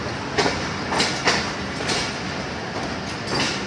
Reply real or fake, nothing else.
real